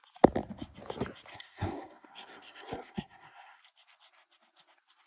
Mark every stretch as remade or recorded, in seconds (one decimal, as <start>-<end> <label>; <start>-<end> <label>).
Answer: 0.0-1.3 recorded; 1.3-3.6 remade; 3.6-5.1 recorded